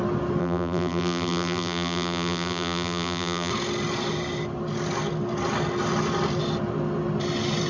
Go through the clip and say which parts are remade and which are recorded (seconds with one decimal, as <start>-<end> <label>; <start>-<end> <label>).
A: 0.0-0.4 recorded; 0.4-3.5 remade; 3.5-7.7 recorded